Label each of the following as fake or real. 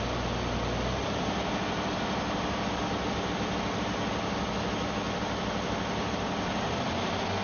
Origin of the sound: real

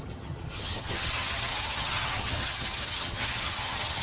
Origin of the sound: fake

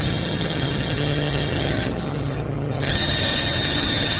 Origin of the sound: fake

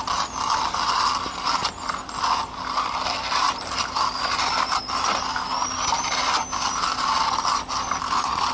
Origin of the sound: real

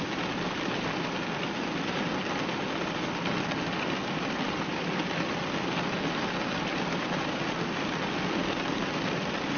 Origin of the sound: real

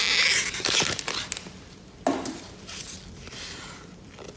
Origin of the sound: real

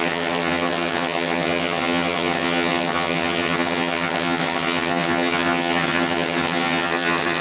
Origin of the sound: fake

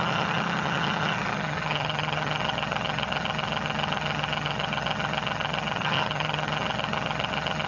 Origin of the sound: fake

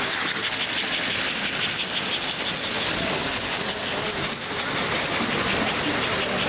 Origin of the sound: real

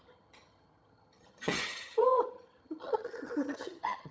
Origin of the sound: fake